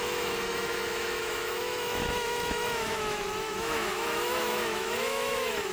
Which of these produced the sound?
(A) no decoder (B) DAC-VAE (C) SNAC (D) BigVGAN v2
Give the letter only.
B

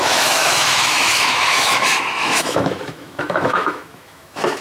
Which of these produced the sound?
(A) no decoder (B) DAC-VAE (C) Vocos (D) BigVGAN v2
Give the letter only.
B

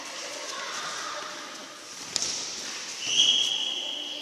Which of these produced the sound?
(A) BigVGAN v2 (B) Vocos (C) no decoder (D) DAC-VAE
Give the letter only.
C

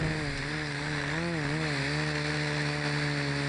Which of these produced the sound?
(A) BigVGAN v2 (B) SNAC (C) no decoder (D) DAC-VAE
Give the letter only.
C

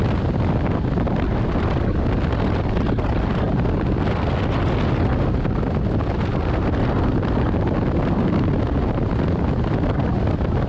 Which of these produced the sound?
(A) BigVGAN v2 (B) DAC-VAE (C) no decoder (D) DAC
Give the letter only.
C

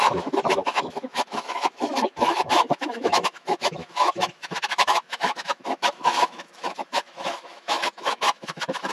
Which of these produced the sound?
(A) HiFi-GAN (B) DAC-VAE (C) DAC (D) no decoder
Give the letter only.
B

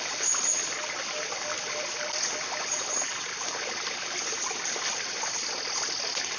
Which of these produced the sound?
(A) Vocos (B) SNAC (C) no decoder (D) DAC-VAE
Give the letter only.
C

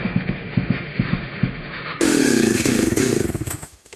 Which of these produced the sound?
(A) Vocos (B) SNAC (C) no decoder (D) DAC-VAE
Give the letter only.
D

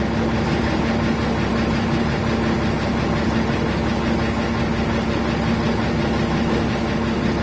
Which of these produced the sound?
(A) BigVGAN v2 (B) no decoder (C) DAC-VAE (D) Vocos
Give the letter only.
B